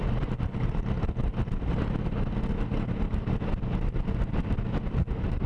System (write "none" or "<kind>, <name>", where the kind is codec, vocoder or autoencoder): none